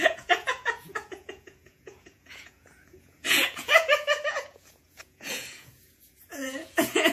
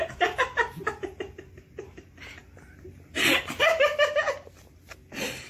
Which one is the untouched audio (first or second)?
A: second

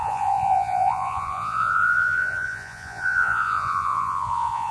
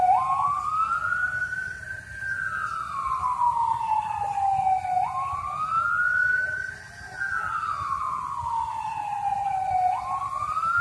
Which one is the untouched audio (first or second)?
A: second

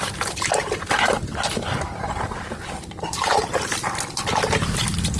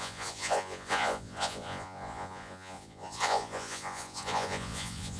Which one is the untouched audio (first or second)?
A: first